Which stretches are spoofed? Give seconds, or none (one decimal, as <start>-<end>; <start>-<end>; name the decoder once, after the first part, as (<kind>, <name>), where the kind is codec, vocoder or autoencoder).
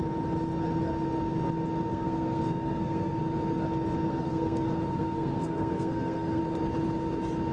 1.9-3.2 (codec, SNAC); 4.1-6.4